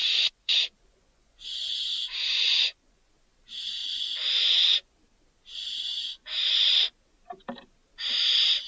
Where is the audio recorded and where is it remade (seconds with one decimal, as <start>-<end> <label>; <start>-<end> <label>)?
0.0-3.2 remade; 3.2-3.8 recorded; 3.8-5.0 remade; 5.0-8.7 recorded